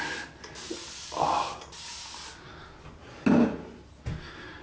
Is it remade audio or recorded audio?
recorded